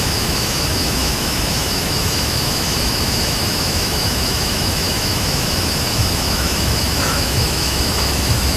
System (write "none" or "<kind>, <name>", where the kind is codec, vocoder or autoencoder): autoencoder, DAC-VAE